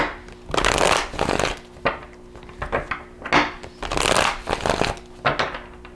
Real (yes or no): yes